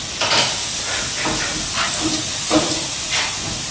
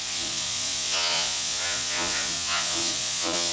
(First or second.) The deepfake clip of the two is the second